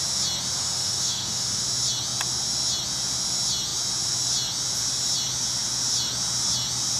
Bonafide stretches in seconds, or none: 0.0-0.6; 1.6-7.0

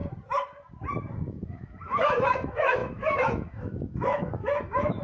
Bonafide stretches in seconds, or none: 0.0-1.3

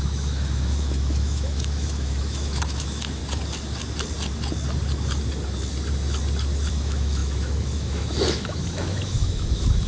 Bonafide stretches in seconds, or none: 3.2-6.7